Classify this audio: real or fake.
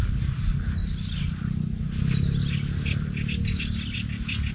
real